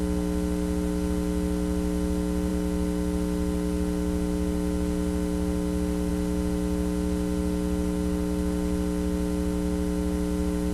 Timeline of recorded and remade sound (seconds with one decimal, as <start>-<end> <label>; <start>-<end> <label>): 0.0-10.7 recorded